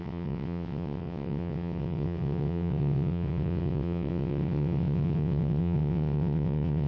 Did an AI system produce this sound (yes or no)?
yes